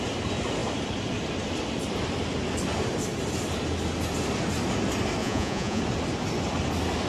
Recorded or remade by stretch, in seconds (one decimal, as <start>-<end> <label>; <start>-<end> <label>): 0.0-5.2 recorded; 5.2-5.8 remade; 5.8-7.1 recorded